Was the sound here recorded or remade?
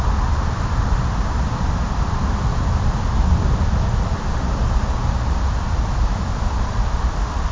remade